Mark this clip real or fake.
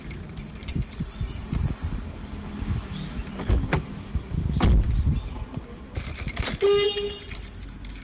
real